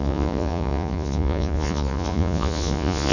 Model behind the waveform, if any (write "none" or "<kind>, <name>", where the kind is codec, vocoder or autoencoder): vocoder, Vocos